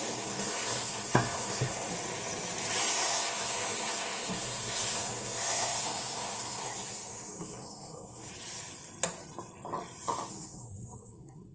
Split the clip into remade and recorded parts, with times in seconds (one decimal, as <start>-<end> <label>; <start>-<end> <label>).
0.0-1.9 remade; 1.9-2.8 recorded; 2.8-8.3 remade; 8.3-10.3 recorded; 10.3-11.5 remade